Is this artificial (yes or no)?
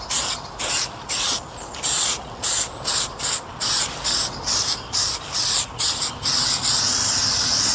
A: no